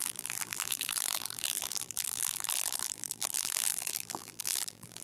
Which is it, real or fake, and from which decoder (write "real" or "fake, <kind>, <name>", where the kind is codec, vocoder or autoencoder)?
fake, vocoder, BigVGAN v2